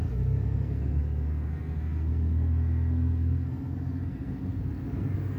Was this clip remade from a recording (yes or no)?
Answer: yes